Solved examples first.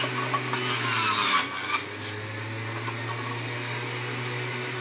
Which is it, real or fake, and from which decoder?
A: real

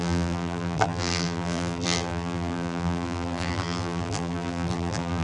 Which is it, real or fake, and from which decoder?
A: fake, vocoder, BigVGAN v2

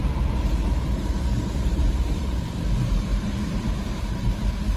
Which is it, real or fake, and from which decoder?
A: fake, vocoder, BigVGAN v2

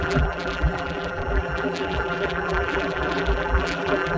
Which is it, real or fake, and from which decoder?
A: fake, vocoder, BigVGAN v2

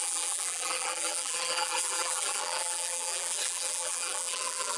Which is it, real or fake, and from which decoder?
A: fake, vocoder, BigVGAN v2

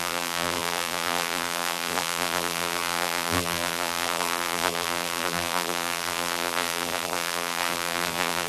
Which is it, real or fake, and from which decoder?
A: fake, vocoder, BigVGAN v2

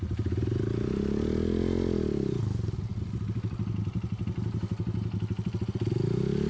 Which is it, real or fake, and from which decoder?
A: real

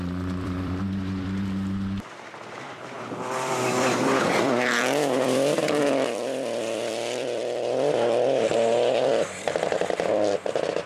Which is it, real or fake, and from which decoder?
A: fake, vocoder, BigVGAN v2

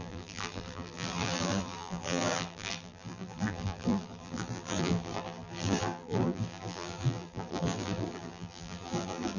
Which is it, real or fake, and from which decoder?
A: fake, vocoder, BigVGAN v2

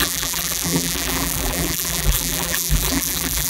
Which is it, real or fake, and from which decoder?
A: fake, vocoder, BigVGAN v2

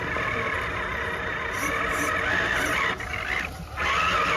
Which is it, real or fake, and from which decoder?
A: real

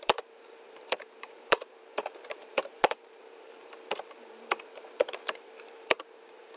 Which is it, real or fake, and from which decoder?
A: fake, vocoder, BigVGAN v2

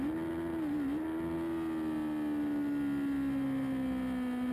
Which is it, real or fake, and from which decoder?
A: real